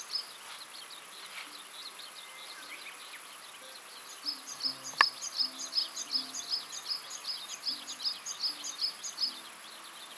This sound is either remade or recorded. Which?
recorded